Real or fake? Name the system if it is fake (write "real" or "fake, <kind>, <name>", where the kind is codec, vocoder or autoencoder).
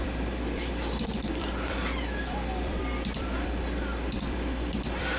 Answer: fake, vocoder, BigVGAN v2